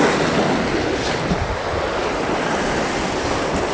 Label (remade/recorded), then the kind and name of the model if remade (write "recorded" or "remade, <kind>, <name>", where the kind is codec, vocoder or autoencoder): recorded